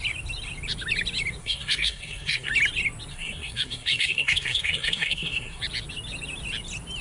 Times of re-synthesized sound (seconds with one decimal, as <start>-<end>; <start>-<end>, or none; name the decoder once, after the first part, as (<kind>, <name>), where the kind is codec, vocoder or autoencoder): 1.4-2.5 (codec, SNAC); 3.1-5.6